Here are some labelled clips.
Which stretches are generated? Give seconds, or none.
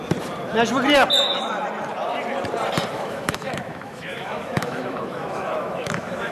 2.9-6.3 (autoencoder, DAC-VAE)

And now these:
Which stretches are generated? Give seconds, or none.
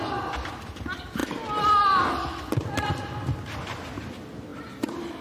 none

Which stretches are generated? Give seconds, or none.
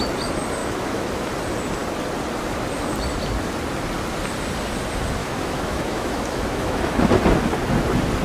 0.6-1.3 (autoencoder, DAC-VAE); 5.2-7.1